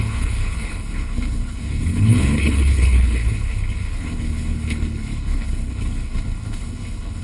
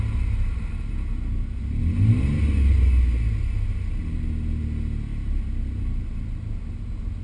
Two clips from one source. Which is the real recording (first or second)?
second